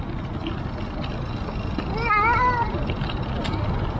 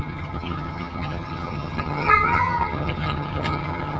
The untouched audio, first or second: first